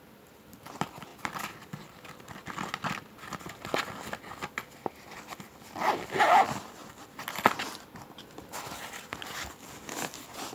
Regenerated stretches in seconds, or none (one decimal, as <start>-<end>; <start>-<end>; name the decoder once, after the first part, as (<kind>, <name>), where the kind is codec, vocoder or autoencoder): none